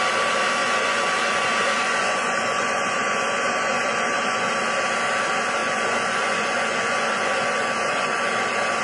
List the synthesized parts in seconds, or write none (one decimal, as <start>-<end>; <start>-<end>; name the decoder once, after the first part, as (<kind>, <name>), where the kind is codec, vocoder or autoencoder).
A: 0.6-4.5 (vocoder, Vocos); 5.6-8.3

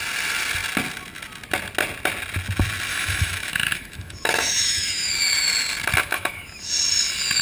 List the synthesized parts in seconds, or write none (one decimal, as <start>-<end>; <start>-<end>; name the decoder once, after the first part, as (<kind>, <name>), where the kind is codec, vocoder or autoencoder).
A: 2.9-5.1 (autoencoder, DAC-VAE); 6.0-6.7

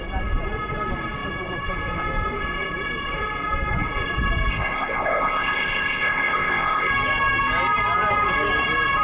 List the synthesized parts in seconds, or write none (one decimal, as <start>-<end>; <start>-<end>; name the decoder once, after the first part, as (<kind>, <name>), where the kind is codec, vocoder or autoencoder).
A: 4.5-6.9 (codec, ZipCodec)